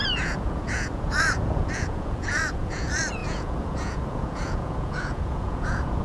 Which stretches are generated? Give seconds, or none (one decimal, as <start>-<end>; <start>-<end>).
0.0-6.0